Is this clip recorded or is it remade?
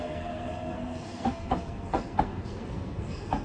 remade